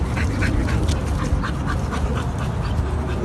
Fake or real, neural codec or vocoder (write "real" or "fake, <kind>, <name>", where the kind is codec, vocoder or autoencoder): real